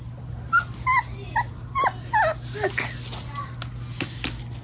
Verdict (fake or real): real